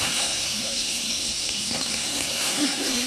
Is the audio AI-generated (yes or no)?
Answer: yes